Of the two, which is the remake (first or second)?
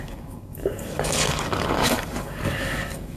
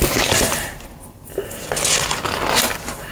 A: first